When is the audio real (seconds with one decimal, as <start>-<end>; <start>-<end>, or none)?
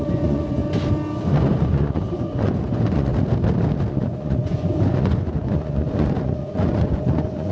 0.6-1.3; 3.1-3.9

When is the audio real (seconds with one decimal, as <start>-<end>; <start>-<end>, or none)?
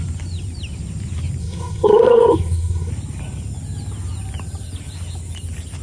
0.0-1.4; 2.9-5.8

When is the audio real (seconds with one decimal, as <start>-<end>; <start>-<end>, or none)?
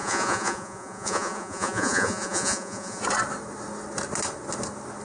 3.0-5.0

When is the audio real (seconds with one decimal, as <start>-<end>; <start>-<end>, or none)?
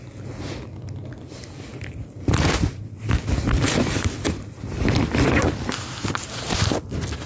0.0-1.7; 5.4-7.3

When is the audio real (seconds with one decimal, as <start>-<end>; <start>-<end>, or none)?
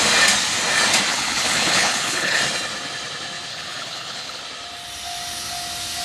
0.0-1.1; 2.4-3.5; 4.4-6.0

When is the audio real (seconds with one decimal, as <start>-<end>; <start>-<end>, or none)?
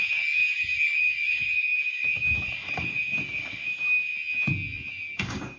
4.1-4.9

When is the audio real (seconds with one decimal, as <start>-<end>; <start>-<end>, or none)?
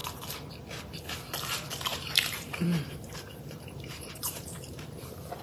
0.0-1.9